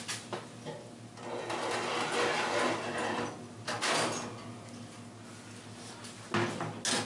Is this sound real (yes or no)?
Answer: yes